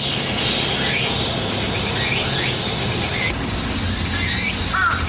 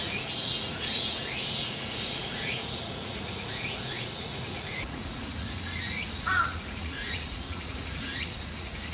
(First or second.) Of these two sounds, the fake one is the second